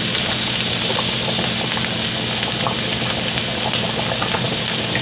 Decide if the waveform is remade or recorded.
recorded